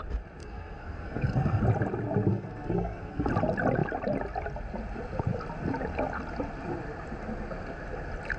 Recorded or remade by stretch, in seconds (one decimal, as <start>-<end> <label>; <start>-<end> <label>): 0.0-0.4 recorded; 0.4-1.6 remade; 1.6-2.3 recorded; 2.3-3.3 remade; 3.3-8.4 recorded

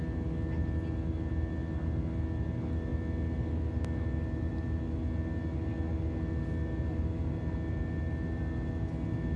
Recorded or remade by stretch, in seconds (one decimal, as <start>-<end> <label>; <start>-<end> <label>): 0.0-9.4 recorded

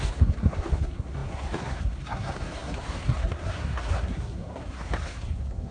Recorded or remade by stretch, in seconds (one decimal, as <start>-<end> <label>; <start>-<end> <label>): 0.0-5.7 remade

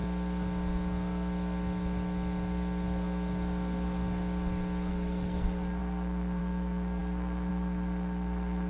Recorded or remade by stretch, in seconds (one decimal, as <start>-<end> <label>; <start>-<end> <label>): 0.0-4.9 recorded; 4.9-8.7 remade

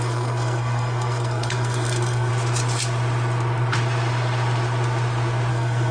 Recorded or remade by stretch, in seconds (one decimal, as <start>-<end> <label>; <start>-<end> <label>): 0.0-2.3 remade; 2.3-5.5 recorded; 5.5-5.9 remade

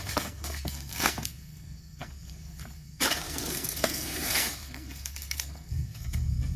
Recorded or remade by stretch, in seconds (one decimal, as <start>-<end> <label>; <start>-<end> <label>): 0.0-6.6 remade

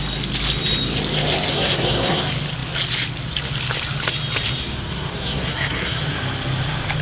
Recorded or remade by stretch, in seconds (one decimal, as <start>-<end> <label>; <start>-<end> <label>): 0.0-1.5 recorded; 1.5-2.2 remade; 2.2-4.9 recorded; 4.9-6.0 remade; 6.0-7.0 recorded

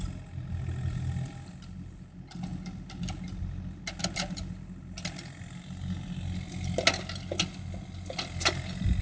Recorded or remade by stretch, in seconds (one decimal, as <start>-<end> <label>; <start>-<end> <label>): 0.0-9.0 recorded